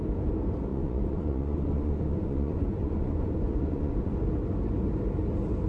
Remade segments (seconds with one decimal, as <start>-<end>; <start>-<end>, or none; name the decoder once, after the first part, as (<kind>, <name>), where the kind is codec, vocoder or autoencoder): 0.7-4.1 (vocoder, Vocos)